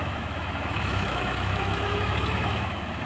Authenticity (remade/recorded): remade